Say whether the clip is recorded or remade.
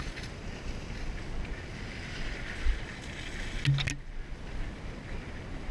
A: recorded